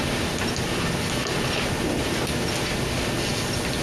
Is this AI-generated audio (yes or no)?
no